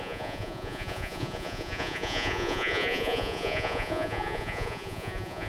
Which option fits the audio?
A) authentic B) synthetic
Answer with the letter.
B